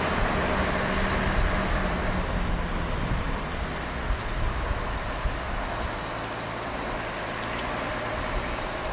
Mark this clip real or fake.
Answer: real